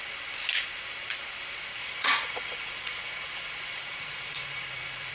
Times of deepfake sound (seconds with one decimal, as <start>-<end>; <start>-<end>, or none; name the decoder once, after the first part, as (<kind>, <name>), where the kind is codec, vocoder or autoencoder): 1.8-5.1 (vocoder, Vocos)